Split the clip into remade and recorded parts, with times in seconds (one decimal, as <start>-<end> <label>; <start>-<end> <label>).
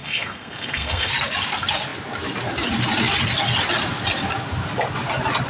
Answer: 0.0-1.1 remade; 1.1-5.5 recorded